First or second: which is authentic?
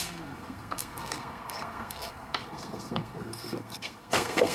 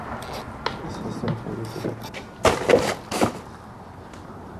second